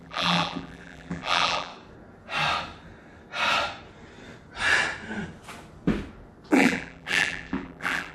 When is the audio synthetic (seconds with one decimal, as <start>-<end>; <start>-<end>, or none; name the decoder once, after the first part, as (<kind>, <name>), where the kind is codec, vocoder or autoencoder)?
0.0-1.7 (vocoder, BigVGAN v2); 6.5-8.1